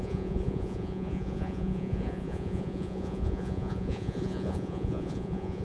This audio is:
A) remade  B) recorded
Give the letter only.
A